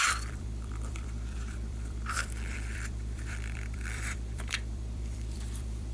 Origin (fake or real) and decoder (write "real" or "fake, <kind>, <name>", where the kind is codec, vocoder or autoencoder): fake, vocoder, BigVGAN v2